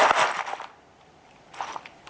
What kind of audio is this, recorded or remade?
recorded